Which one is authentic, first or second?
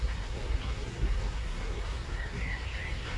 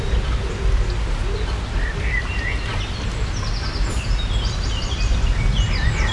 second